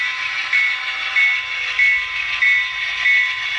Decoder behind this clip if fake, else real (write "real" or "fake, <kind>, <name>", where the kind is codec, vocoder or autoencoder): real